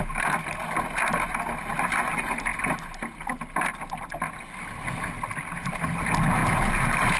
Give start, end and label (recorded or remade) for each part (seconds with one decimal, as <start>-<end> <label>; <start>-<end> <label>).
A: 0.0-7.2 recorded